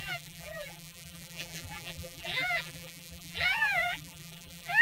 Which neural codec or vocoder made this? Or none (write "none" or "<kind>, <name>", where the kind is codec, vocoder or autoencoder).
vocoder, BigVGAN v2